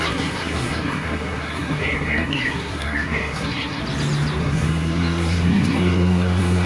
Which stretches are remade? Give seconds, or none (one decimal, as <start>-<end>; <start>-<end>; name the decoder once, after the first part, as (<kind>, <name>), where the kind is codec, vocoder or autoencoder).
0.0-3.8 (codec, SNAC); 4.4-6.7